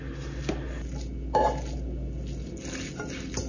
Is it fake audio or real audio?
real